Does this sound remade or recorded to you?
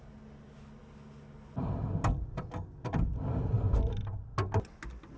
recorded